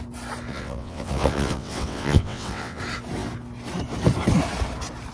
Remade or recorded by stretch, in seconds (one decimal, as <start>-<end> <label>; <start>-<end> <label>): 0.0-0.5 recorded; 0.5-2.8 remade; 2.8-5.1 recorded